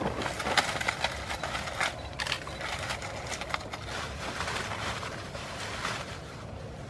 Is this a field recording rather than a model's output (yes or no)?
yes